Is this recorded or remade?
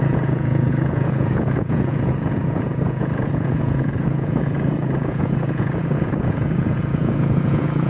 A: remade